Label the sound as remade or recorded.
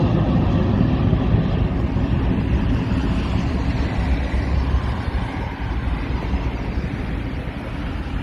recorded